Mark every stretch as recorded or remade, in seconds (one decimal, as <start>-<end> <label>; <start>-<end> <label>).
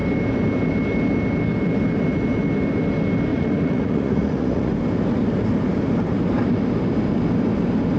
0.0-3.3 recorded; 3.3-4.7 remade; 4.7-8.0 recorded